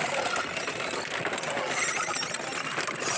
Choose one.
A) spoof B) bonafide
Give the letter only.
B